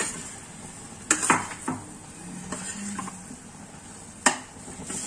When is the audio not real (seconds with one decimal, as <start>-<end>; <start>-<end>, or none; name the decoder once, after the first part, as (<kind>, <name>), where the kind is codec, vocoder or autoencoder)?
none